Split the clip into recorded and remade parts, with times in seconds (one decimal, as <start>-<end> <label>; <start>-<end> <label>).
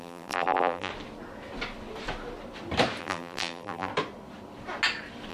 0.0-0.9 remade; 0.9-3.0 recorded; 3.0-3.9 remade; 3.9-5.3 recorded